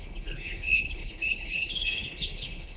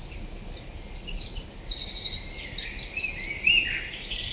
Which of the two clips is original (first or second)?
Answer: second